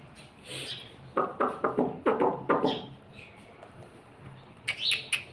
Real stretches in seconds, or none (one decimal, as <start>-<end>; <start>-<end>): 0.0-0.5; 3.7-5.3